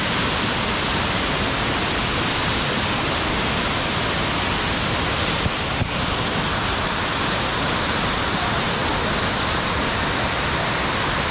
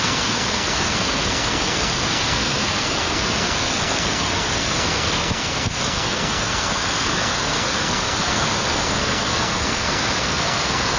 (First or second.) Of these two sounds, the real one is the first